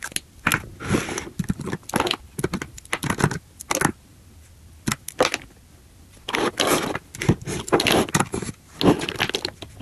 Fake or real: real